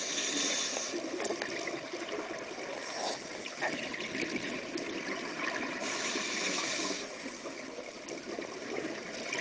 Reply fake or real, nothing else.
real